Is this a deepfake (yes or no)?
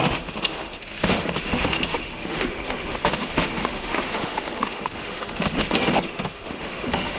yes